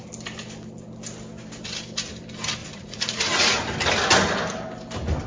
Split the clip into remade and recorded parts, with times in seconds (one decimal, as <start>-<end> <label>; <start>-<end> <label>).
0.0-2.6 recorded; 2.6-3.6 remade; 3.6-5.3 recorded